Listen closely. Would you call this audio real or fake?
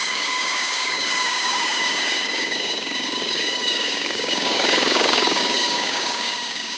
fake